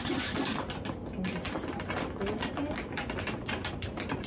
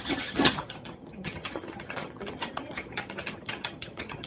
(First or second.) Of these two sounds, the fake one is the second